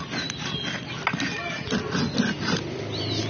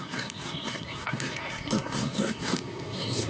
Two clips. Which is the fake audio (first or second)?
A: second